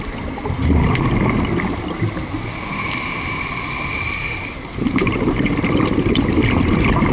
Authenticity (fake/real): real